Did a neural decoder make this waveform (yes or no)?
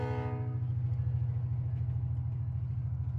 no